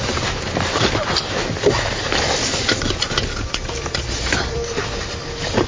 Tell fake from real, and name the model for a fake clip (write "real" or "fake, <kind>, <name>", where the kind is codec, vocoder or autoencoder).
fake, vocoder, BigVGAN v2